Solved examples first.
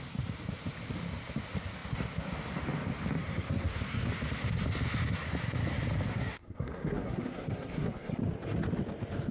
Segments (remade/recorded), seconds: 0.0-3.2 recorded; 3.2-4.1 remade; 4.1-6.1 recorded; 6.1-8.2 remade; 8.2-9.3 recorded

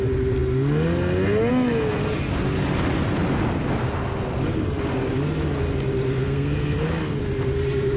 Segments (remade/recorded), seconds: 0.0-6.2 recorded; 6.2-6.8 remade; 6.8-8.0 recorded

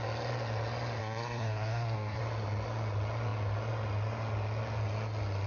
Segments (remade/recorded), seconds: 0.0-1.0 recorded; 1.0-2.2 remade; 2.2-5.5 recorded

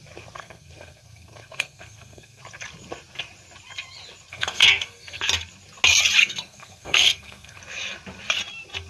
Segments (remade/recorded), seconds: 0.0-0.4 recorded; 0.4-2.4 remade; 2.4-4.3 recorded; 4.3-5.2 remade; 5.2-6.2 recorded; 6.2-7.6 remade; 7.6-8.9 recorded

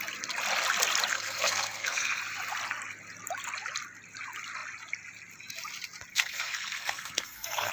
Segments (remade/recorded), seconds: 0.0-1.1 recorded; 1.1-2.2 remade; 2.2-6.1 recorded; 6.1-7.7 remade

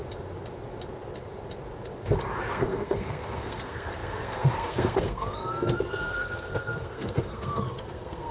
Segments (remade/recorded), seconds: 0.0-2.5 recorded; 2.5-8.3 remade

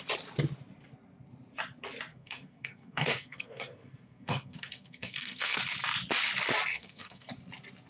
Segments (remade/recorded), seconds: 0.0-2.1 recorded; 2.1-5.6 remade; 5.6-6.7 recorded; 6.7-7.3 remade; 7.3-7.9 recorded

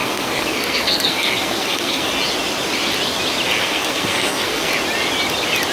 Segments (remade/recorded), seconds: 0.0-2.1 remade; 2.1-3.6 recorded; 3.6-4.7 remade; 4.7-5.7 recorded